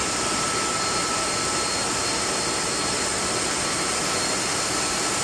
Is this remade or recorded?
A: recorded